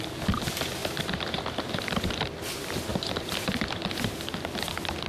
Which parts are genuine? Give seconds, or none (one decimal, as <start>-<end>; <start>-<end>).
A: 0.0-0.8; 1.7-5.1